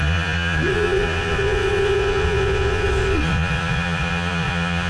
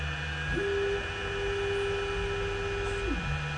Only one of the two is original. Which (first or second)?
second